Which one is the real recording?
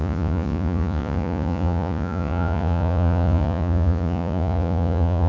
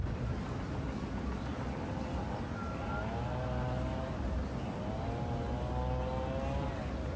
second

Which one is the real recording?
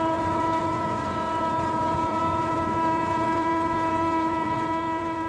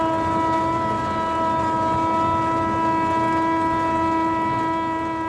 second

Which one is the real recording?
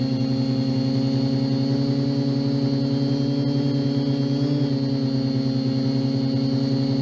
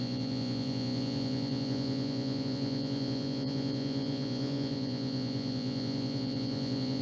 first